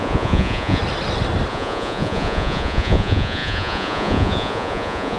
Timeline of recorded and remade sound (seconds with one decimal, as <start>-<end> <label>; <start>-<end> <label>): 0.0-0.8 remade; 0.8-1.5 recorded; 1.5-5.2 remade